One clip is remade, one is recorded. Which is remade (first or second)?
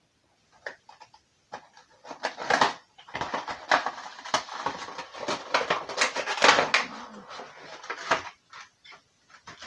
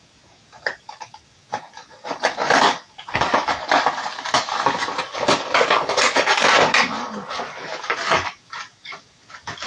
second